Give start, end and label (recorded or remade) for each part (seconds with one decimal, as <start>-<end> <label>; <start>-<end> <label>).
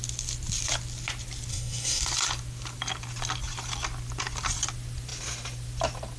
0.0-1.5 recorded; 1.5-2.0 remade; 2.0-6.2 recorded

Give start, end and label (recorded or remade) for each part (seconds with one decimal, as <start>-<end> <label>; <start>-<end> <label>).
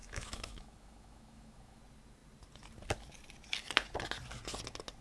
0.0-1.8 remade; 1.8-5.0 recorded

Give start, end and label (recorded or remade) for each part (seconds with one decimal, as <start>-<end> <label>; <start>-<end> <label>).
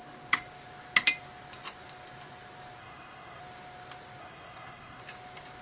0.0-2.8 recorded; 2.8-3.4 remade; 3.4-4.2 recorded; 4.2-5.0 remade; 5.0-5.6 recorded